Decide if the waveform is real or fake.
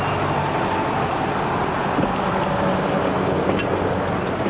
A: real